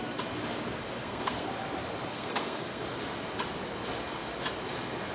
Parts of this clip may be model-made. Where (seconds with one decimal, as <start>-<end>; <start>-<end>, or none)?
1.0-1.5; 2.1-2.8